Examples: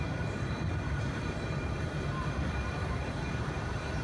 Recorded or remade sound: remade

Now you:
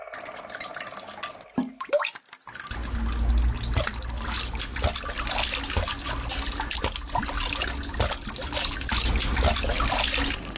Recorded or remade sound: recorded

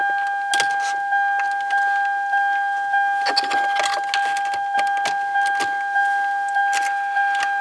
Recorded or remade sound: recorded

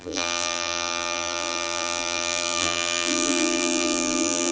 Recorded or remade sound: remade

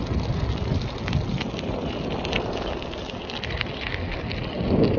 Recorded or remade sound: recorded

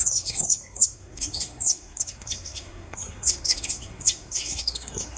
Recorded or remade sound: remade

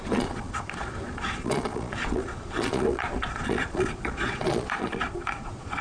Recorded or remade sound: remade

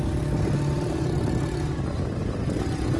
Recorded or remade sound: recorded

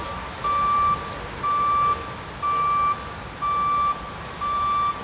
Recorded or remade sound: recorded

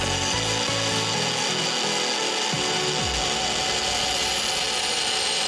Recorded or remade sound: recorded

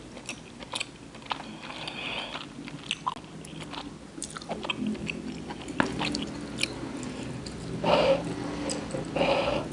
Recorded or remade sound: recorded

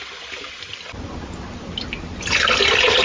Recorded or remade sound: remade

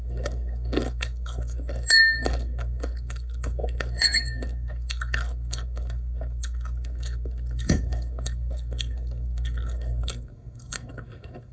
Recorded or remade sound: remade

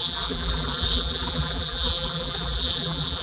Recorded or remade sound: remade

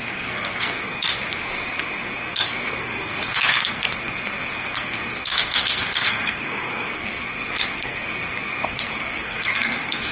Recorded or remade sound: remade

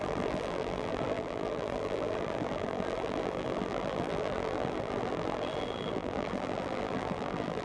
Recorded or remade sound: remade